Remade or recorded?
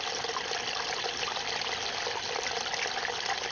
recorded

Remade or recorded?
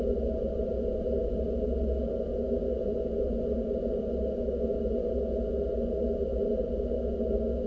recorded